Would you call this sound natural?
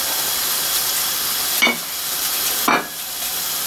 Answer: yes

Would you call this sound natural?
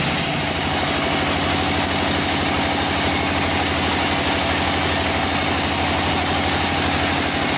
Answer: yes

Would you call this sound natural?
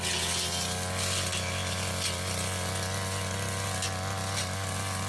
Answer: yes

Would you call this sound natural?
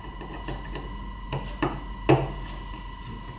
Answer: yes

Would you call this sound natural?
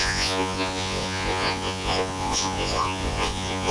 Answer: no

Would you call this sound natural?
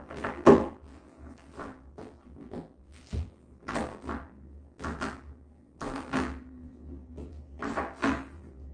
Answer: no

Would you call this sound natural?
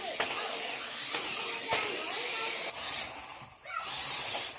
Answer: yes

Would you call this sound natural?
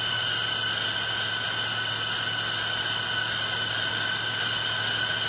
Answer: yes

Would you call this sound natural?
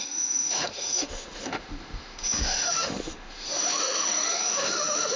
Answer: no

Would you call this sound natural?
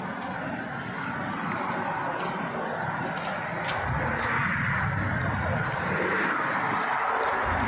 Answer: yes